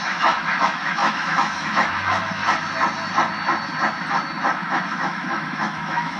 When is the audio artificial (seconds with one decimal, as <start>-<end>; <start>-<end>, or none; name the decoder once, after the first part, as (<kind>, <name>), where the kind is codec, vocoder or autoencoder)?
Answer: 0.0-2.4 (autoencoder, DAC-VAE); 4.6-6.2